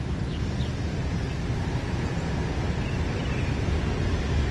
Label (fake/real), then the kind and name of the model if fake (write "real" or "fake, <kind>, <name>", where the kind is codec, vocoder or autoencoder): real